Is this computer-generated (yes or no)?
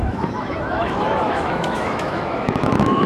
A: yes